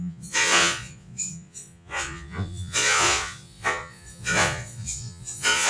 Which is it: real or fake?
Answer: fake